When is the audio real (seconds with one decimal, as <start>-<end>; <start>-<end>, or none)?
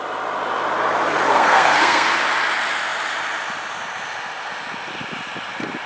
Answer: 0.0-1.3; 2.2-5.9